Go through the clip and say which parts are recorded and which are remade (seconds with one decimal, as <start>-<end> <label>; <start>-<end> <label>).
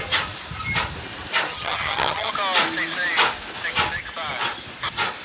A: 0.0-1.5 recorded; 1.5-2.3 remade; 2.3-5.2 recorded